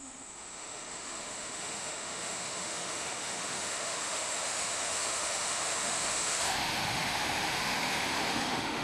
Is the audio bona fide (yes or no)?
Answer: no